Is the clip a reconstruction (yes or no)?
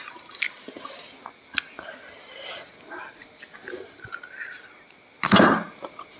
no